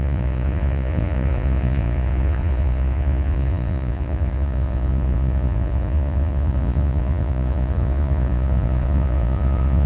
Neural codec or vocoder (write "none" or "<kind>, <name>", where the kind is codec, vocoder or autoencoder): vocoder, Vocos